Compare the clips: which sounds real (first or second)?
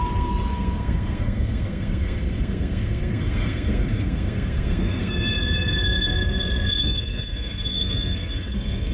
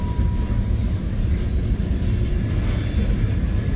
second